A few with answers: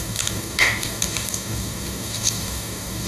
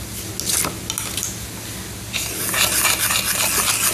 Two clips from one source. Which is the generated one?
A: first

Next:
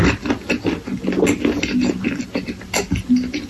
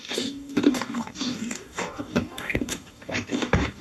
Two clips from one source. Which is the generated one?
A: second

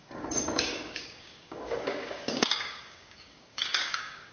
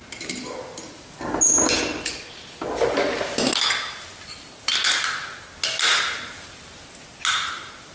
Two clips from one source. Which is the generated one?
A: first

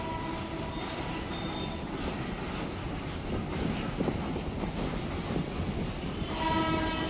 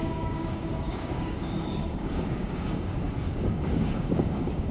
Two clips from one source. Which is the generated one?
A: second